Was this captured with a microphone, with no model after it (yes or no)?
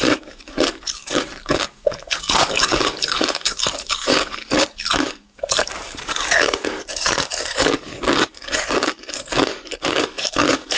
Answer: no